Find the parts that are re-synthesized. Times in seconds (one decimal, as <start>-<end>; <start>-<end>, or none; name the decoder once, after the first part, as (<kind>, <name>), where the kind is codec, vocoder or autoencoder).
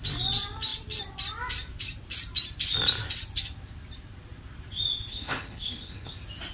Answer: 5.1-6.1 (codec, HILCodec)